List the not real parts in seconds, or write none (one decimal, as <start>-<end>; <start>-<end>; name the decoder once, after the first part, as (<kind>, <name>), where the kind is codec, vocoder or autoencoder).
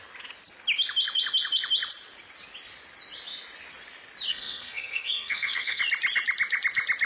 4.3-5.8 (codec, SNAC)